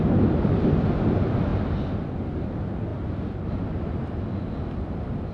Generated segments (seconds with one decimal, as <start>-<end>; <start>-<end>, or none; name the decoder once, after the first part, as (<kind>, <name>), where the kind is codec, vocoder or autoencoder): none